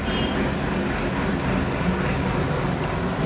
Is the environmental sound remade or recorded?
remade